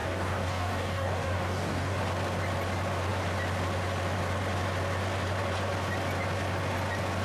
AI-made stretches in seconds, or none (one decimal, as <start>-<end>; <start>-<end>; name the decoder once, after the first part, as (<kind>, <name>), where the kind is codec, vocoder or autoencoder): 0.0-2.0 (codec, DAC)